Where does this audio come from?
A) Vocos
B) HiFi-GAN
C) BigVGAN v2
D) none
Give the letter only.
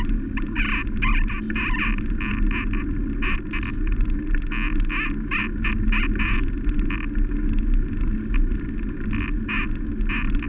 D